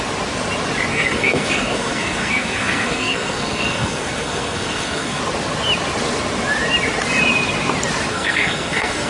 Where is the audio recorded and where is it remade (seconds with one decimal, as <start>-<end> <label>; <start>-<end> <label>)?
0.0-0.9 recorded; 0.9-5.2 remade; 5.2-8.1 recorded; 8.1-9.1 remade

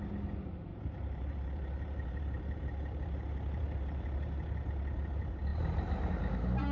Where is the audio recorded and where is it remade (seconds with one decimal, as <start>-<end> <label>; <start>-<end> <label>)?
0.0-0.7 recorded; 0.7-4.7 remade; 4.7-6.7 recorded

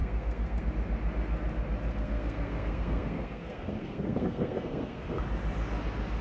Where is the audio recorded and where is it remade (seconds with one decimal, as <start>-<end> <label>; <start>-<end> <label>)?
0.0-0.7 remade; 0.7-1.9 recorded; 1.9-5.2 remade; 5.2-6.2 recorded

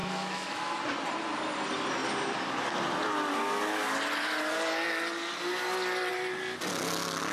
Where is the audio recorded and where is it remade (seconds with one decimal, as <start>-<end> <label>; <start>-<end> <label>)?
0.0-0.8 remade; 0.8-7.3 recorded

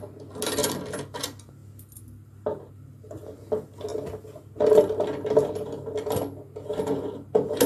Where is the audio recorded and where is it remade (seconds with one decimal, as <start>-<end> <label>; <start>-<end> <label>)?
0.0-7.7 recorded

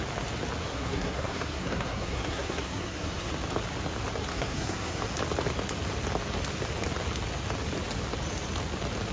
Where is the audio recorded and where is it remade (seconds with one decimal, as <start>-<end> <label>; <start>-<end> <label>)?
0.0-0.6 recorded; 0.6-3.3 remade; 3.3-4.3 recorded; 4.3-5.0 remade; 5.0-9.1 recorded

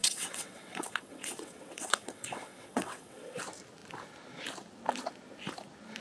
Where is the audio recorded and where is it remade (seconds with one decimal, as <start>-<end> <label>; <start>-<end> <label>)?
0.0-3.4 remade; 3.4-6.0 recorded

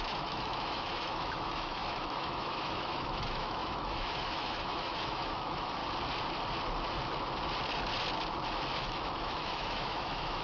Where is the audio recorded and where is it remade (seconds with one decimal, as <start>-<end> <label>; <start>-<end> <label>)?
0.0-5.8 remade; 5.8-8.8 recorded; 8.8-10.4 remade